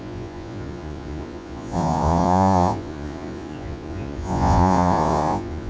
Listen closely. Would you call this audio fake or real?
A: fake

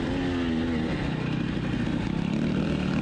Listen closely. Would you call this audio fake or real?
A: real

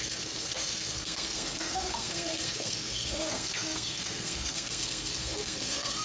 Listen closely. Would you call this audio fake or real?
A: fake